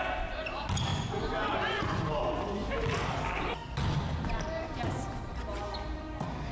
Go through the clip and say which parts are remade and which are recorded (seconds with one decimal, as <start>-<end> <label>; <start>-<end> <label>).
0.0-0.9 recorded; 0.9-2.0 remade; 2.0-6.5 recorded